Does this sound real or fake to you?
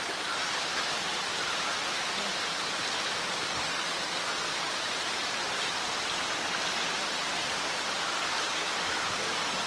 real